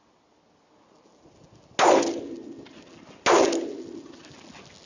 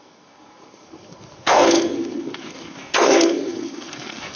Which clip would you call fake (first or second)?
second